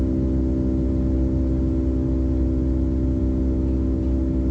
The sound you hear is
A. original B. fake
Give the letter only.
A